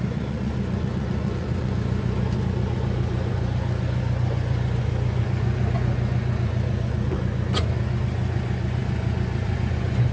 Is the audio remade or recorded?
remade